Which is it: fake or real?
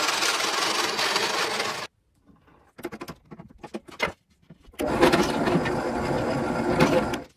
real